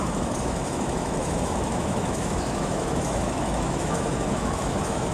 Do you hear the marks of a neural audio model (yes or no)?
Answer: yes